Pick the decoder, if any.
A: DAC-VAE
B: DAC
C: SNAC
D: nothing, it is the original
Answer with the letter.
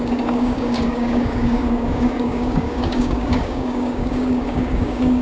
B